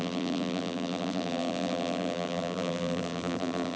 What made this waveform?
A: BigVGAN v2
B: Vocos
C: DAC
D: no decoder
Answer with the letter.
A